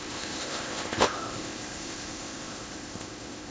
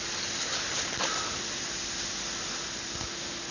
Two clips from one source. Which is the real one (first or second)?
second